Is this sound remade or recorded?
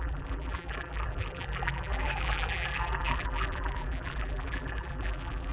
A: remade